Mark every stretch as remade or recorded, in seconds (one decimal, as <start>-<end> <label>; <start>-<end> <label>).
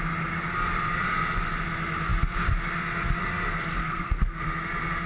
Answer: 0.0-3.8 recorded; 3.8-4.4 remade; 4.4-5.1 recorded